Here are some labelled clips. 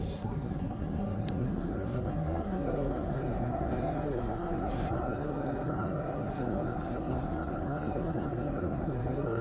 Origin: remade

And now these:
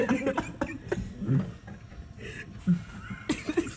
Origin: recorded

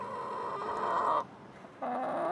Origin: recorded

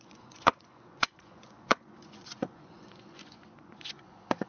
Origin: remade